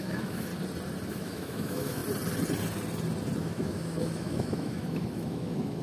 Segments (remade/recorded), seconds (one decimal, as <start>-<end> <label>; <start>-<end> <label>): 0.0-0.5 remade; 0.5-1.1 recorded; 1.1-2.0 remade; 2.0-3.4 recorded; 3.4-5.8 remade